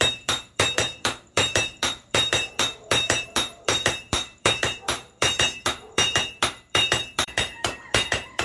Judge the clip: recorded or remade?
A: remade